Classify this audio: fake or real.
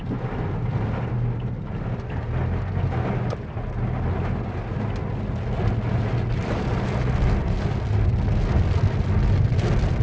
real